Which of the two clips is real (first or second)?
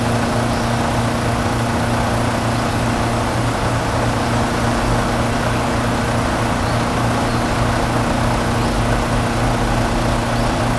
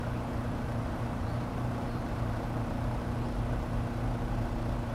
first